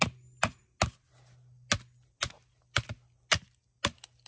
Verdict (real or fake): real